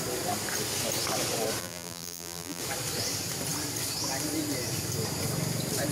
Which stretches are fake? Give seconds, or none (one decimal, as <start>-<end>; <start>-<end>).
1.6-2.6